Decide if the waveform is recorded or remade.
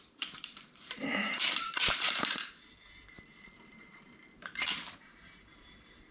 remade